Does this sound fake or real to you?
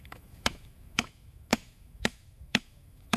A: fake